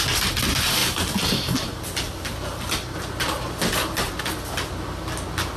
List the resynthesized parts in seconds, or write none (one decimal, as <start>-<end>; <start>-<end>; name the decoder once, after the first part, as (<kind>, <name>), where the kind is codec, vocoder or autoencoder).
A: none